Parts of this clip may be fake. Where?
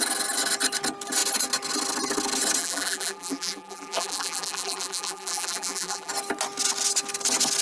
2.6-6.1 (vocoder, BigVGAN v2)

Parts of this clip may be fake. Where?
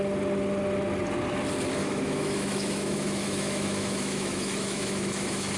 1.8-5.6 (autoencoder, DAC-VAE)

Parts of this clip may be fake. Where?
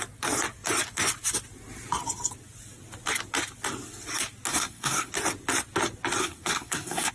4.5-5.1 (codec, SNAC); 6.2-7.1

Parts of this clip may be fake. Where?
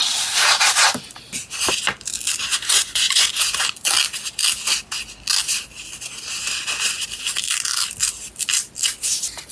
2.5-3.3 (vocoder, Vocos)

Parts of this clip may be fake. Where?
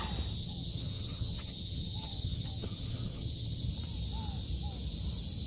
0.4-3.7 (vocoder, HiFi-GAN)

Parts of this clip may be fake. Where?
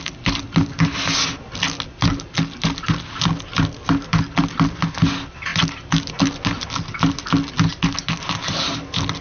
none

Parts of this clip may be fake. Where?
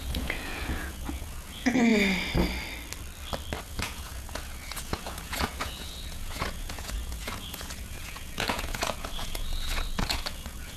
0.0-1.9 (vocoder, Vocos); 3.6-10.8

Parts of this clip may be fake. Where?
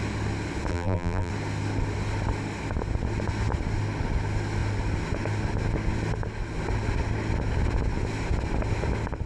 0.7-1.3 (vocoder, BigVGAN v2)